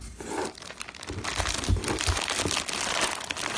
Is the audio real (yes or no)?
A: yes